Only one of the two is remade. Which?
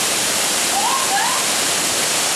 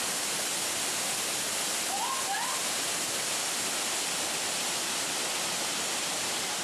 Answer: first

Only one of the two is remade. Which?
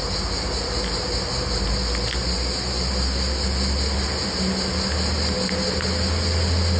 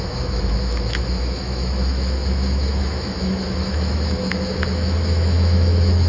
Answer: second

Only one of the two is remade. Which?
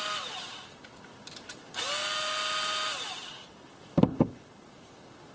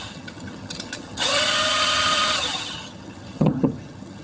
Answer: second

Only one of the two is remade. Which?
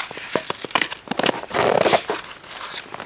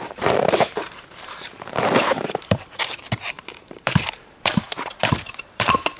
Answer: second